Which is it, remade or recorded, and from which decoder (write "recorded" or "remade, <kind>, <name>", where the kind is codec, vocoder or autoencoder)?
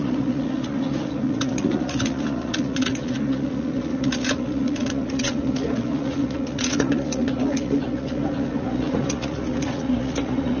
remade, vocoder, Vocos